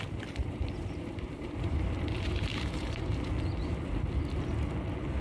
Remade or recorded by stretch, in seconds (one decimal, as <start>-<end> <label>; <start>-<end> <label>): 0.0-0.4 recorded; 0.4-3.3 remade; 3.3-5.2 recorded